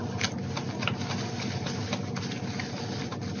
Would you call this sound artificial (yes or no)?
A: no